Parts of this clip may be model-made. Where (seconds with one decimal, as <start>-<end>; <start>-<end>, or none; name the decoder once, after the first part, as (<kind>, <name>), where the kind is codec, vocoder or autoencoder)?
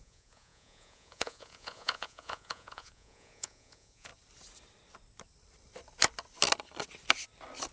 0.0-4.1 (vocoder, Vocos)